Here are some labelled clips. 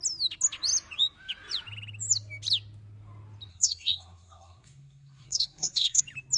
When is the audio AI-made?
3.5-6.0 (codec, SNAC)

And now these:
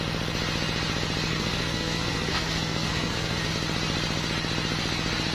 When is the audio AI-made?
1.3-3.5 (codec, SNAC)

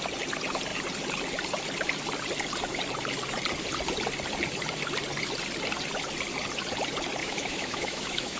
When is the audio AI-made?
7.2-8.4 (autoencoder, DAC-VAE)

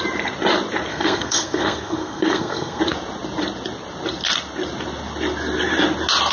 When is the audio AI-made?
0.9-2.8 (codec, SNAC)

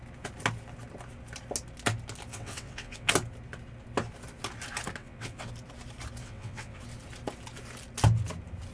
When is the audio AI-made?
2.3-3.1 (vocoder, WaveNeXt); 5.0-5.5; 6.2-6.8

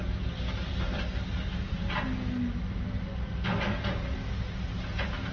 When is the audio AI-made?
none

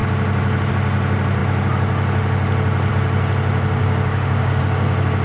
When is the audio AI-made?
3.8-4.6 (codec, DAC)